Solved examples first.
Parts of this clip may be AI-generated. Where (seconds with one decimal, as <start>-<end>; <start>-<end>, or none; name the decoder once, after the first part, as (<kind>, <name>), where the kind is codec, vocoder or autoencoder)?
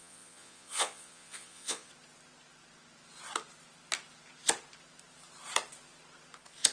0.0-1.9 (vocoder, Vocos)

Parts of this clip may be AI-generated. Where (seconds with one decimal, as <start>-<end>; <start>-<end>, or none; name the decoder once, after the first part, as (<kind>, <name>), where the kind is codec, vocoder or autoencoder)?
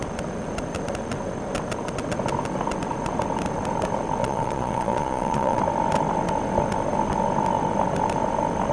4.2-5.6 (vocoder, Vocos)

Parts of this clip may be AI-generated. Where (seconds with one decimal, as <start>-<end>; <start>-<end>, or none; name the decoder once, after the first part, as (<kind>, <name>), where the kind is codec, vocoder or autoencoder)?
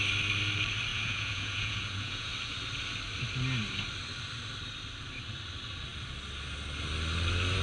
0.9-2.3 (vocoder, Vocos)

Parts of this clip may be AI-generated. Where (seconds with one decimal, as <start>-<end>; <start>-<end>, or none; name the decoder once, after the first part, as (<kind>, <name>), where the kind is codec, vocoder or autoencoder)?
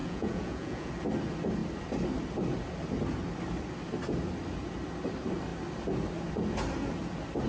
0.0-0.9 (vocoder, Vocos)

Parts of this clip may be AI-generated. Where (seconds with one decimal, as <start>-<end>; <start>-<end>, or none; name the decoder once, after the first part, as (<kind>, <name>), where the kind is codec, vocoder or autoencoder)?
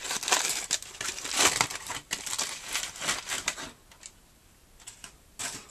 none